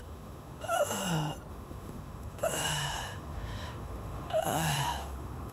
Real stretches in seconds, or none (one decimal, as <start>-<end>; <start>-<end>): 1.0-1.5